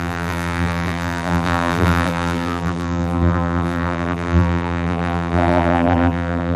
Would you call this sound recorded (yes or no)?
no